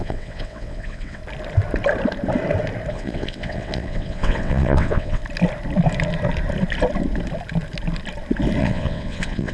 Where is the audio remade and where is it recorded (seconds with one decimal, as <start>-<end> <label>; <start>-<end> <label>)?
0.0-1.2 remade; 1.2-2.9 recorded; 2.9-5.2 remade; 5.2-8.6 recorded; 8.6-9.5 remade